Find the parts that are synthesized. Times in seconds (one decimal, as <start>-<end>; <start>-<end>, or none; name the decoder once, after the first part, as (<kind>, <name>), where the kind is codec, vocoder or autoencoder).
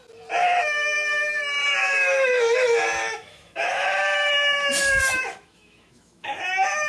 0.4-1.4 (autoencoder, DAC-VAE); 1.8-4.3; 5.0-6.4